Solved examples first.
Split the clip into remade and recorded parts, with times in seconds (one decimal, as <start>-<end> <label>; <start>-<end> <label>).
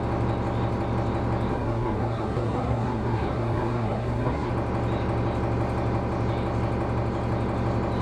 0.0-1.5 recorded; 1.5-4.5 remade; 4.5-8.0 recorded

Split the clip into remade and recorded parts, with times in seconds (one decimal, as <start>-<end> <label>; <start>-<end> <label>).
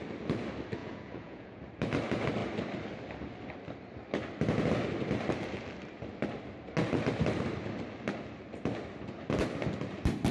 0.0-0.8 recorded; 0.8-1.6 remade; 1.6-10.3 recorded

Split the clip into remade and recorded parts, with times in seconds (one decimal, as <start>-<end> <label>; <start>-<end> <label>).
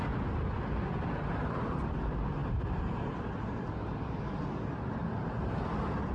0.0-6.1 recorded